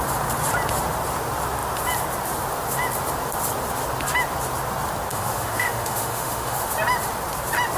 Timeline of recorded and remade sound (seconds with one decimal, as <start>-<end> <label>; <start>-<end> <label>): 0.0-5.1 recorded; 5.1-6.7 remade; 6.7-7.8 recorded